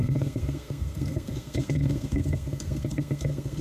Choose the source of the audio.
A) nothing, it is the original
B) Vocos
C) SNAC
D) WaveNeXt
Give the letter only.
C